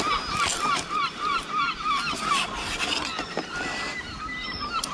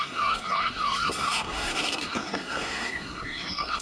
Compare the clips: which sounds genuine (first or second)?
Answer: first